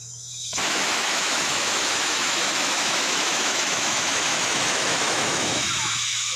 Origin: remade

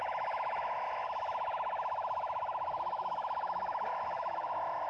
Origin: remade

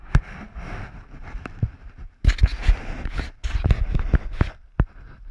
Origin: recorded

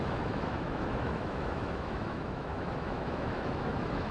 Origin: remade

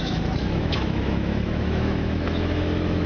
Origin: remade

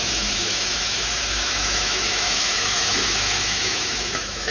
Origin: remade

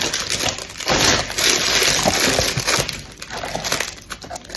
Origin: recorded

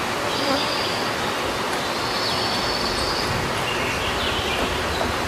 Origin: recorded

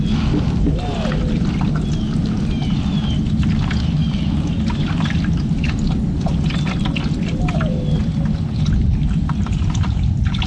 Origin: recorded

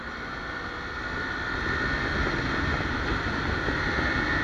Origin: recorded